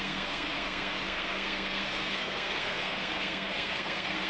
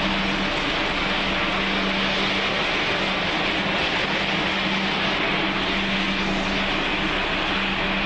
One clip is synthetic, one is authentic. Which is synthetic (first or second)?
first